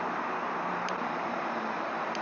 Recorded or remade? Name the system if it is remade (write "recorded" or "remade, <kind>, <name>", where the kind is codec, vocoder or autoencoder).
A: remade, vocoder, BigVGAN v2